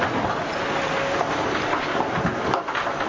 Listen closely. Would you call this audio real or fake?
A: real